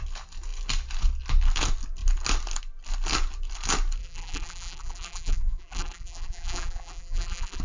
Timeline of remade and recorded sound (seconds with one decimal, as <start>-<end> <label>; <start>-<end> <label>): 0.0-4.0 recorded; 4.0-7.6 remade